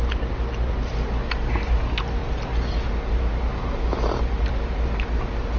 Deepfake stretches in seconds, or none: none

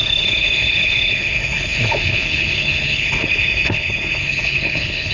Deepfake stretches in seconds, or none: 0.0-5.1 (codec, HILCodec)